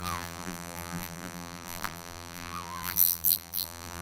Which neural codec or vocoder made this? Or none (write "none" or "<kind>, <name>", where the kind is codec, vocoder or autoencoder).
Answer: vocoder, BigVGAN v2